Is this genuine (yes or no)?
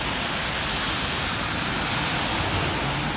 yes